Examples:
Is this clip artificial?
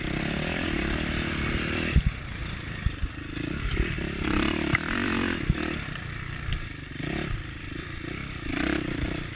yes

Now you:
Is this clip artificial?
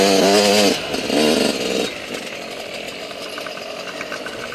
no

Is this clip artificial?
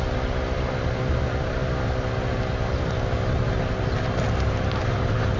no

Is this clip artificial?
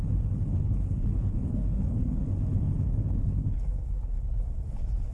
yes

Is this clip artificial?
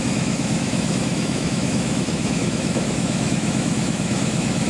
yes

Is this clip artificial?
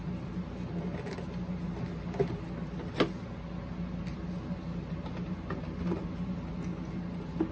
no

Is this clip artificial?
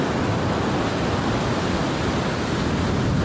no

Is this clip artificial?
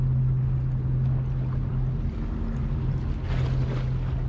no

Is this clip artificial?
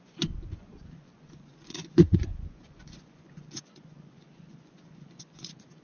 yes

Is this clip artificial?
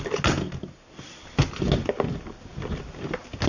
no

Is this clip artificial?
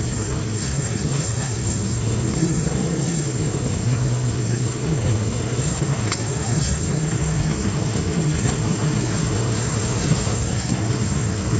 yes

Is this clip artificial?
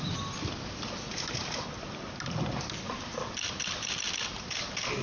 no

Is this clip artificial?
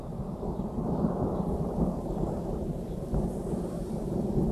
yes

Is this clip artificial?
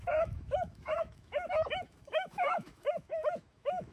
yes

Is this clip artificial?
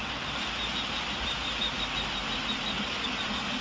no